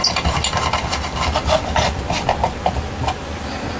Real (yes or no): yes